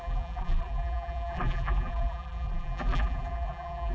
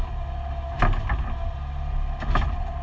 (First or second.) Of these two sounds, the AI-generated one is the first